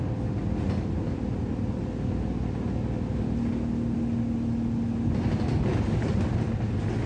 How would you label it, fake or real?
real